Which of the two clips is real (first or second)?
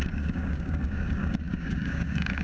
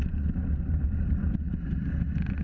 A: second